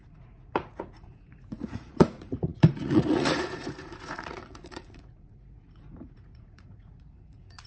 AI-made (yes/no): yes